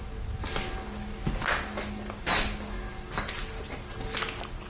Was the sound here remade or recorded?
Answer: recorded